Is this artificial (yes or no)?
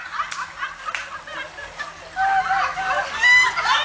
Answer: no